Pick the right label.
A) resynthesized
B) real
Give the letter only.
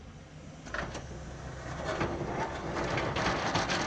B